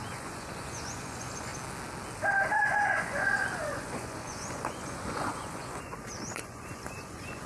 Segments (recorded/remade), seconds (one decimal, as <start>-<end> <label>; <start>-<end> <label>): 0.0-1.5 remade; 1.5-2.5 recorded; 2.5-7.5 remade